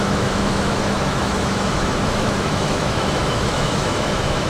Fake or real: fake